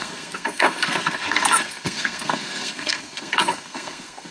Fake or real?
fake